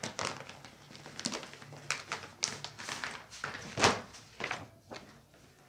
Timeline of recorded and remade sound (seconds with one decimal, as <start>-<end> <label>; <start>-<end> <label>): 0.0-5.7 recorded